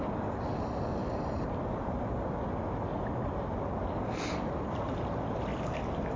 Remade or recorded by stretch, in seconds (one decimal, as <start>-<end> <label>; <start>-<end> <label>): 0.0-1.0 remade; 1.0-4.6 recorded; 4.6-5.5 remade; 5.5-6.2 recorded